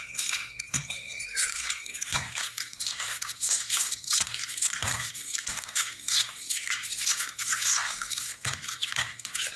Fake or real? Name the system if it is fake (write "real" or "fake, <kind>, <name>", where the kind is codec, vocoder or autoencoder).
fake, codec, SNAC